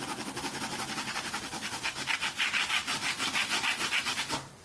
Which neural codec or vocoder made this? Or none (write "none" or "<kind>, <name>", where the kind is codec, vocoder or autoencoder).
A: none